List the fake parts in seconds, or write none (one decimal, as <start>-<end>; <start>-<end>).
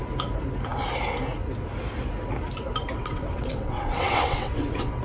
2.9-5.0